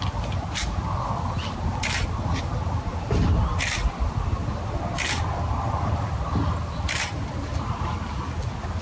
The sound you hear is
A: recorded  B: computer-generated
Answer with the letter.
A